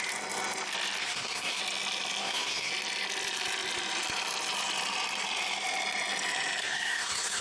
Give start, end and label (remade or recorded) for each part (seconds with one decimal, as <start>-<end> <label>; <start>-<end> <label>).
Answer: 0.0-1.0 recorded; 1.0-1.6 remade; 1.6-2.2 recorded; 2.2-2.7 remade; 2.7-6.6 recorded; 6.6-7.4 remade